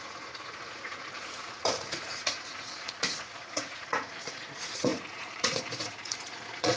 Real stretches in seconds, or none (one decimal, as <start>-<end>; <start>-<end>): none